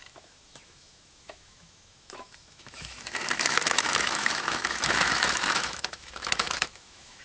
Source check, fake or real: fake